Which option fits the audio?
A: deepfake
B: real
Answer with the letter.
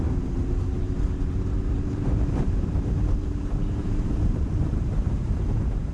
A